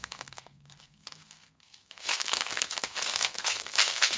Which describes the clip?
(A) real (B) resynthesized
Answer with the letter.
B